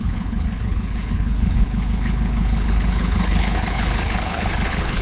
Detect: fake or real fake